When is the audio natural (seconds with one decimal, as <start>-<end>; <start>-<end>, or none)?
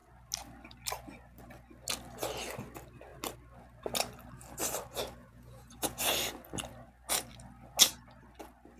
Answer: 0.0-5.2; 6.0-8.8